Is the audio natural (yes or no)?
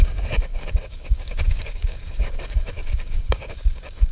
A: no